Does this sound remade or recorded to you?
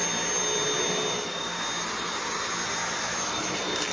recorded